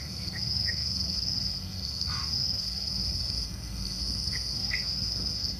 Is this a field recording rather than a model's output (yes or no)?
no